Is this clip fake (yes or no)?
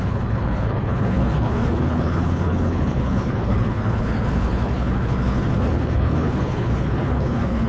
yes